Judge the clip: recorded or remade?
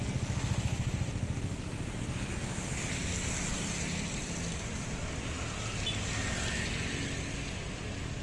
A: recorded